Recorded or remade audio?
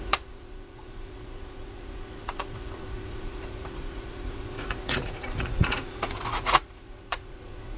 remade